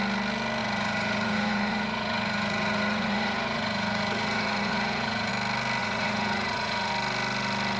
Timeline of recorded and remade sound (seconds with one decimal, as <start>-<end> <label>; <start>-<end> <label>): 0.0-0.6 recorded; 0.6-5.3 remade; 5.3-5.8 recorded; 5.8-6.9 remade; 6.9-7.8 recorded

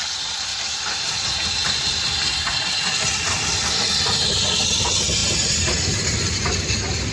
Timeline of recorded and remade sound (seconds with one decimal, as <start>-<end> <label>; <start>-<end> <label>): 0.0-7.1 recorded

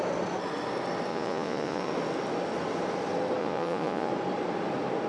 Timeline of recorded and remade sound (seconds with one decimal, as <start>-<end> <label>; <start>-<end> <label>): 0.0-1.1 recorded; 1.1-1.9 remade; 1.9-3.4 recorded; 3.4-4.1 remade; 4.1-5.1 recorded

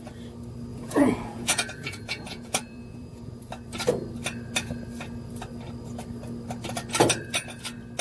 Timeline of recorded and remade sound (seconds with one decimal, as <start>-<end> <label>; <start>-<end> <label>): 0.0-0.7 recorded; 0.7-3.4 remade; 3.4-8.0 recorded

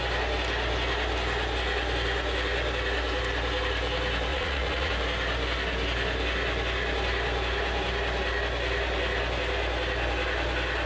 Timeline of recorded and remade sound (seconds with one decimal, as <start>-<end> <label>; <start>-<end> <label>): 0.0-4.3 recorded; 4.3-4.9 remade; 4.9-10.9 recorded